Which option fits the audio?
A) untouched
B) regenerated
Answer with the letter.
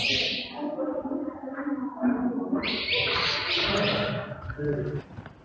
A